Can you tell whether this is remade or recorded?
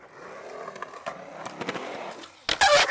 recorded